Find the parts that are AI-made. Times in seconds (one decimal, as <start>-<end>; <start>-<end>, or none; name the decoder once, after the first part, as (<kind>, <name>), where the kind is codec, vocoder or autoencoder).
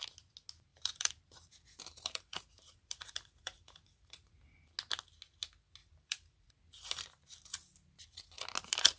0.7-4.3 (vocoder, BigVGAN v2); 5.8-6.5